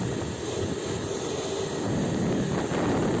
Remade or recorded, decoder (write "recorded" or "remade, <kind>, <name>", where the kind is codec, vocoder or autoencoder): recorded